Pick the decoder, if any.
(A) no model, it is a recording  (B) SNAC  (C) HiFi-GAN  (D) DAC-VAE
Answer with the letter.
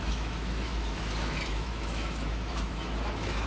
D